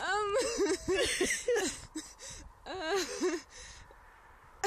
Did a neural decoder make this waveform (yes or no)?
no